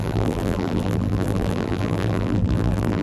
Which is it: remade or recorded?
remade